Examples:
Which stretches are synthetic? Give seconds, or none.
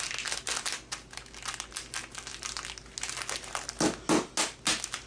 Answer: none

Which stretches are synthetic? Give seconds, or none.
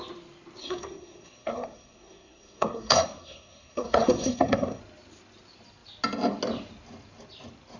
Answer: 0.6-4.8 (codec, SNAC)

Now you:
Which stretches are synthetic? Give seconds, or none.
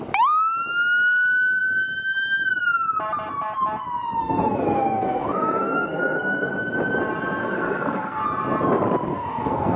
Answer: 4.2-6.5 (codec, SNAC); 7.4-8.2; 9.1-9.8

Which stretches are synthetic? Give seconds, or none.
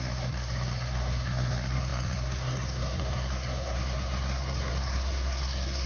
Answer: 0.0-5.9 (codec, SNAC)